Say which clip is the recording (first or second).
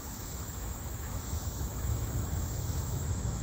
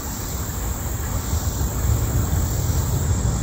second